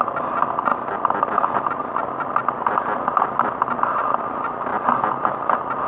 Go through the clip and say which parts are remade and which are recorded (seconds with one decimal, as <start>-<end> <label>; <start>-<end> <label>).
0.0-5.9 recorded